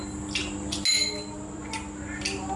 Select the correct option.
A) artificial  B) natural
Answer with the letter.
B